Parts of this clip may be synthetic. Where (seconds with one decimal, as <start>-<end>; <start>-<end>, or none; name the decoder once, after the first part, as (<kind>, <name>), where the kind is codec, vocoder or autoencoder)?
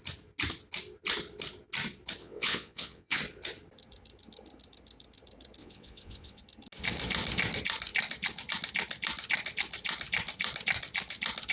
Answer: 2.2-3.2 (vocoder, WaveNeXt); 5.6-6.4